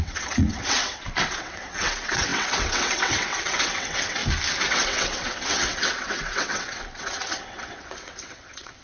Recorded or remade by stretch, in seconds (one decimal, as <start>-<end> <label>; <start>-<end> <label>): 0.0-4.2 remade; 4.2-4.7 recorded; 4.7-8.8 remade